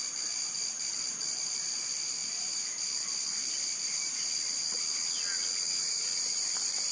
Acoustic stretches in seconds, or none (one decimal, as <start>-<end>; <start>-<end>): 0.0-6.9